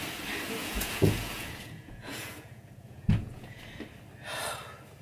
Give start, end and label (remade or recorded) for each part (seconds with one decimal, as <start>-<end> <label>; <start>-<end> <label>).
0.0-0.6 recorded; 0.6-3.6 remade; 3.6-5.0 recorded